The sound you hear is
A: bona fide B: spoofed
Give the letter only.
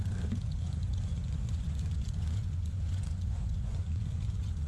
B